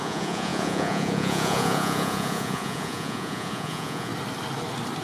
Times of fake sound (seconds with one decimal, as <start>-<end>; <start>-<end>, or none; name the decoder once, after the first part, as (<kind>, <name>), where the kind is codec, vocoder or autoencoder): 0.0-4.1 (vocoder, Vocos)